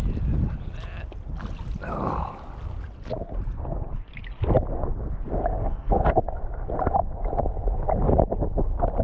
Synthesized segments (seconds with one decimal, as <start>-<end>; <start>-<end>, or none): 5.5-6.2